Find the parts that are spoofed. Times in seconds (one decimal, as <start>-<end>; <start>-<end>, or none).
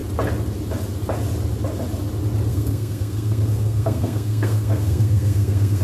2.5-5.8